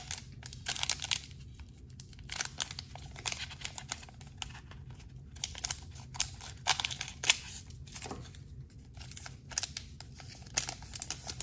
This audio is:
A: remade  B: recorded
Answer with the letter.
B